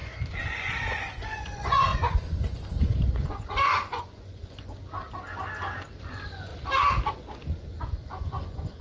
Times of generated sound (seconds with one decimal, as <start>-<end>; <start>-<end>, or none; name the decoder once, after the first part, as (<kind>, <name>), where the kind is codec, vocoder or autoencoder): 0.0-4.8 (vocoder, Vocos); 5.9-6.5; 7.1-8.8